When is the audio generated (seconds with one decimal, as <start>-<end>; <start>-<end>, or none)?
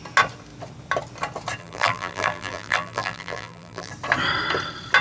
1.6-3.9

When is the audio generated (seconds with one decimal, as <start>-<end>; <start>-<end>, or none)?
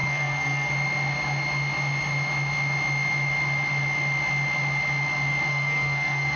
0.0-0.7; 5.5-6.4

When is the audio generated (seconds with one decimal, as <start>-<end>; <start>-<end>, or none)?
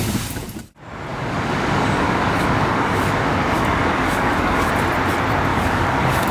1.1-4.7; 5.5-6.3